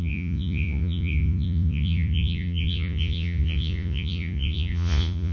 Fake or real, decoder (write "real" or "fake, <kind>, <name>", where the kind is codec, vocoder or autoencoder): fake, vocoder, Vocos